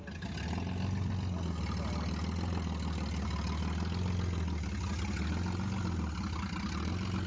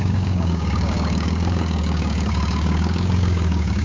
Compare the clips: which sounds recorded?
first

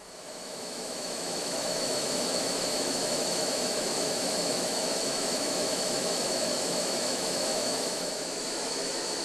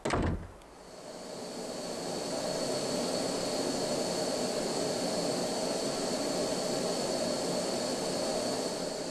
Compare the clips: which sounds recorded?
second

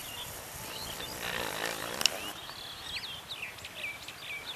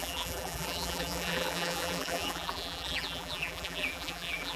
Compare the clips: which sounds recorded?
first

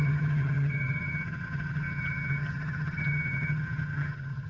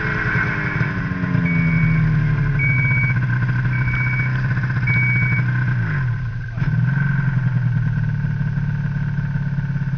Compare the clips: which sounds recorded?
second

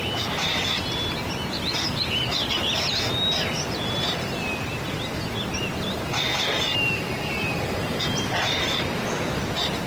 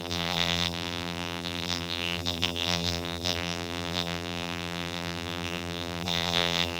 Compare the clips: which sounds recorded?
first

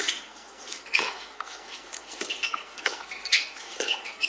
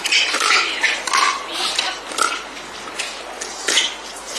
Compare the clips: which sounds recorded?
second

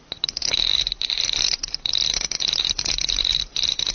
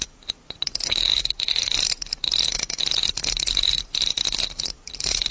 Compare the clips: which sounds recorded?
second